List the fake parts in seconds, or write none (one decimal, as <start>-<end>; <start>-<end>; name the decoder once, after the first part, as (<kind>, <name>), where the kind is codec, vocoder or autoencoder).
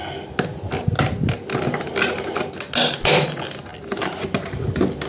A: none